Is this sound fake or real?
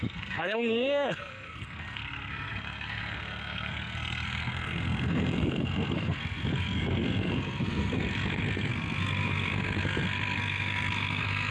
fake